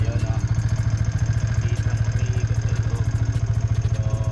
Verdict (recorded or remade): recorded